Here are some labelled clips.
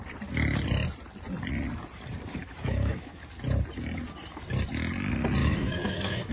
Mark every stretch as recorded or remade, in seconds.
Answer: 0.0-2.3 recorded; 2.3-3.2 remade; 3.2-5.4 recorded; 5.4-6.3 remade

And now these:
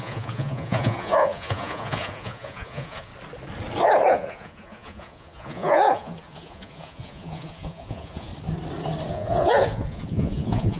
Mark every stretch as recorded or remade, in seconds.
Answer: 0.0-3.1 remade; 3.1-4.1 recorded; 4.1-8.3 remade; 8.3-9.1 recorded; 9.1-10.8 remade

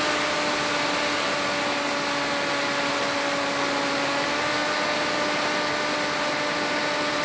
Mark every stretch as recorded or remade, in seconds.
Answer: 0.0-7.2 recorded

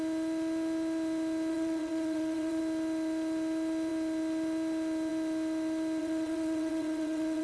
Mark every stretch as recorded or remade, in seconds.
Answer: 0.0-1.5 recorded; 1.5-2.6 remade; 2.6-6.0 recorded; 6.0-7.4 remade

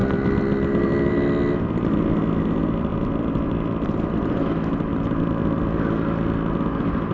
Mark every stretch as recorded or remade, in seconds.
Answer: 0.0-2.9 recorded; 2.9-4.1 remade; 4.1-7.1 recorded

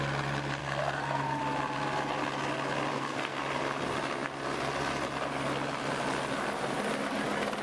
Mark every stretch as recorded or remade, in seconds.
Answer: 0.0-0.6 recorded; 0.6-1.4 remade; 1.4-2.9 recorded; 2.9-3.4 remade; 3.4-7.6 recorded

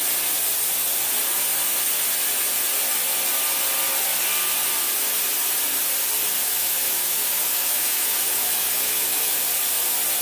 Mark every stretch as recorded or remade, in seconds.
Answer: 0.0-6.4 recorded; 6.4-9.4 remade; 9.4-10.2 recorded

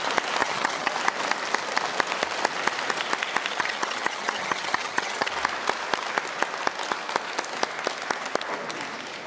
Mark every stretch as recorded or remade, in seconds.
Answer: 0.0-0.4 recorded; 0.4-0.9 remade; 0.9-3.5 recorded; 3.5-5.3 remade; 5.3-9.3 recorded